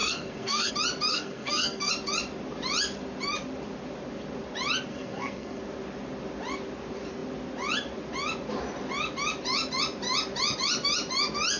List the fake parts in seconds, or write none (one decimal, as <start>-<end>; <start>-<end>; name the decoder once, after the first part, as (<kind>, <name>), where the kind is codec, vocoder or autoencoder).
0.0-0.7 (codec, SNAC); 1.1-1.9; 4.9-5.6